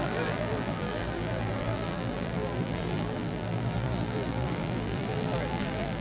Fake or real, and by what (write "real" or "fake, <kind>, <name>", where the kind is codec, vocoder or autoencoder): fake, vocoder, BigVGAN v2